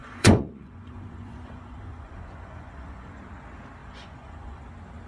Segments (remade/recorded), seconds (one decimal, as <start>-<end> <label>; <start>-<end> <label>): 0.0-3.1 remade; 3.1-3.8 recorded; 3.8-4.6 remade; 4.6-5.1 recorded